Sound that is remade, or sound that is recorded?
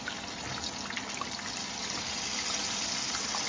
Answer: recorded